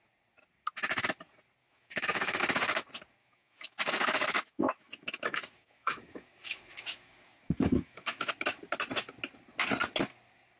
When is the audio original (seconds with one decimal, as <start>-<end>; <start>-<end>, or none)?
0.0-1.6; 2.4-3.2; 8.3-10.6